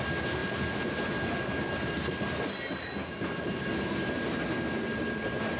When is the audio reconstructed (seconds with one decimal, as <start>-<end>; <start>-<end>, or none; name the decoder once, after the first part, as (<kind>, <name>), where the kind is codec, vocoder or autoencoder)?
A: none